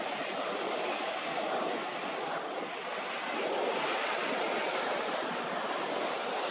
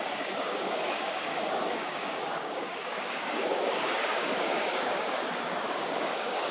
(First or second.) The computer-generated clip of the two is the second